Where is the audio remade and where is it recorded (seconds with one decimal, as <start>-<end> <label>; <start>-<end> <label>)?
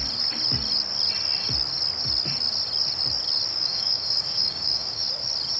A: 0.0-3.5 recorded; 3.5-5.0 remade; 5.0-5.6 recorded